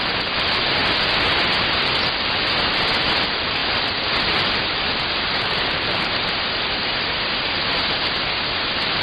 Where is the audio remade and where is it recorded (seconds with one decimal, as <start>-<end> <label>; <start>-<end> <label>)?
0.0-9.0 recorded